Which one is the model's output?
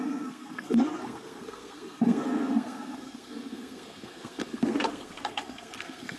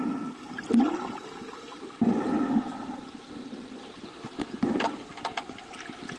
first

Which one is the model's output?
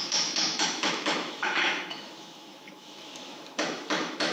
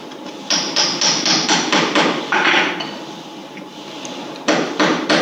first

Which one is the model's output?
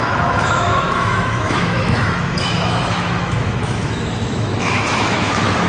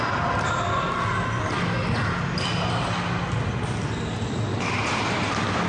first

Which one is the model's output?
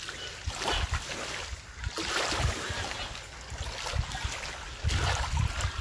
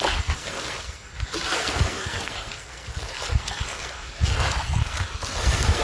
second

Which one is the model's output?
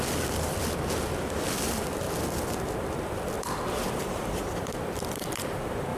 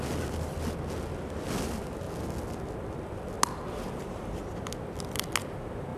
first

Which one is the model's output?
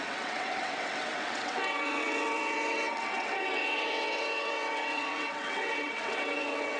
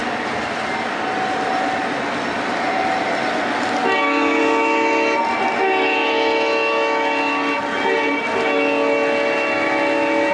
first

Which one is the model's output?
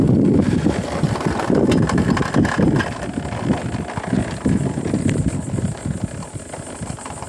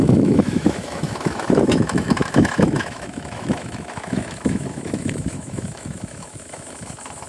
second